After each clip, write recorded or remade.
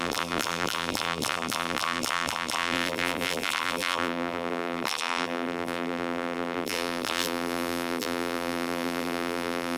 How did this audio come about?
remade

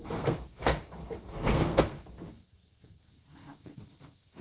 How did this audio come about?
remade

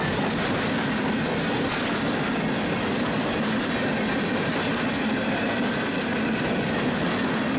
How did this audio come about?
recorded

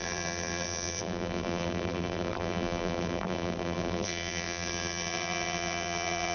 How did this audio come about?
remade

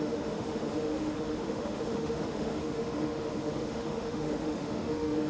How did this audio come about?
remade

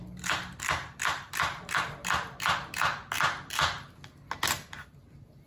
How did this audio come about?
recorded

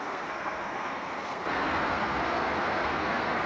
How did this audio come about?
remade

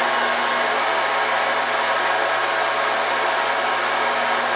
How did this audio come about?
recorded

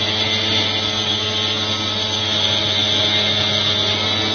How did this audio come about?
recorded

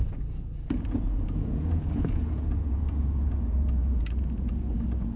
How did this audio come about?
remade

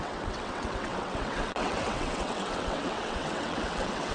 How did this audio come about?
remade